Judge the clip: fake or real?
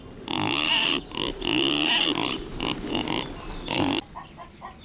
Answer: real